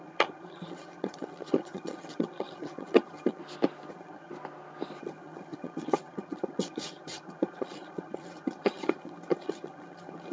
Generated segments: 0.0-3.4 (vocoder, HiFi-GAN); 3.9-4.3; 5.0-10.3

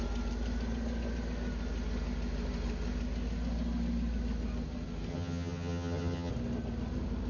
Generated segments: 5.1-6.3 (vocoder, HiFi-GAN)

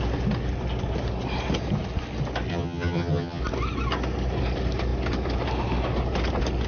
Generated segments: 2.5-3.4 (vocoder, HiFi-GAN)

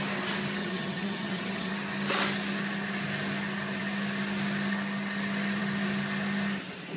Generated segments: 0.6-1.7 (vocoder, HiFi-GAN)

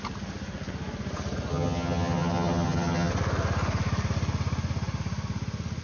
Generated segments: 1.5-3.1 (vocoder, HiFi-GAN)

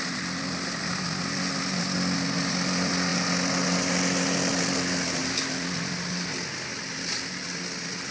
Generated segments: none